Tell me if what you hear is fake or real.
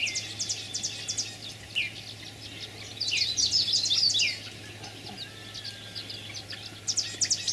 real